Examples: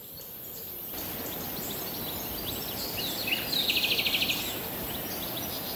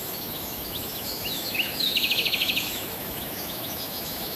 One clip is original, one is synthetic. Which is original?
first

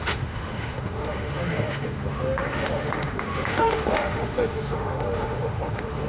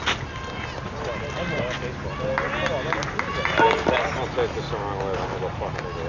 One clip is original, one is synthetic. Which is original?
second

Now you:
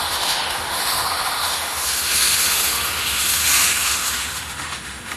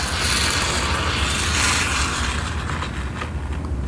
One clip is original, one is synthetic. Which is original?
second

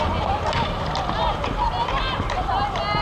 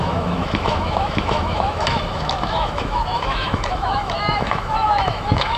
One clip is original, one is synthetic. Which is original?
first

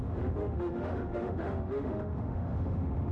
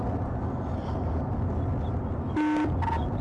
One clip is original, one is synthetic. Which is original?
second